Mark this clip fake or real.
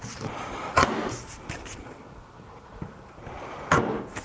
fake